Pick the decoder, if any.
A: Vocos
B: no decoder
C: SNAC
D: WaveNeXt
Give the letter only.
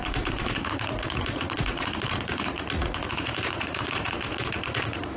A